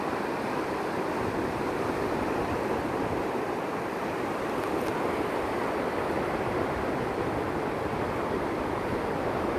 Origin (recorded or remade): recorded